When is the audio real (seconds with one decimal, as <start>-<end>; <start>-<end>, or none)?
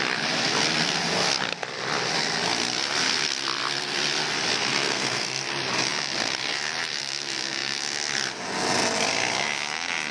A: 0.0-4.7; 5.4-10.1